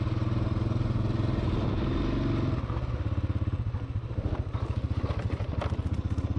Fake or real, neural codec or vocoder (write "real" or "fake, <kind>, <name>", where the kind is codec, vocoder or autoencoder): real